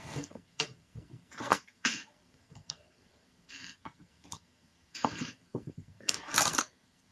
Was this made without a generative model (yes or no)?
no